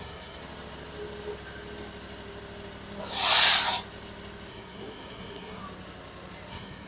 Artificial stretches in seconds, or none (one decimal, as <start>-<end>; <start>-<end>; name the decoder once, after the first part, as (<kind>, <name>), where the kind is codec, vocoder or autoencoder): 0.0-0.4 (codec, SNAC); 4.5-5.6; 6.5-6.9